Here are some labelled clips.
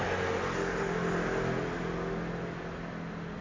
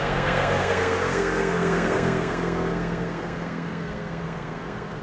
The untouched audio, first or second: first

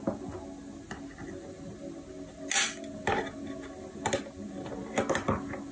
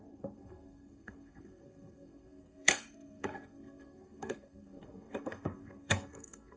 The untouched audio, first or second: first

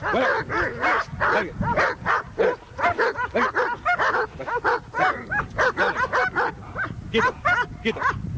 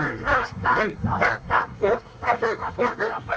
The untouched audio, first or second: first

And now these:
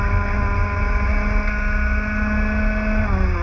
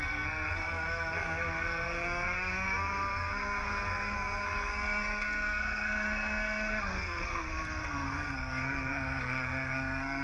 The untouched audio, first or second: first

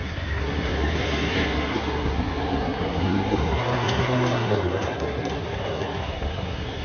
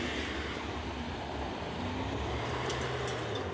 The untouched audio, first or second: second